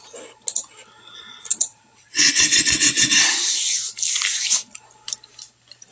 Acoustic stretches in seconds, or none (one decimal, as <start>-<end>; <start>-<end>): 0.0-1.5; 3.9-5.9